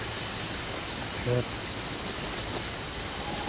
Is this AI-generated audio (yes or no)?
no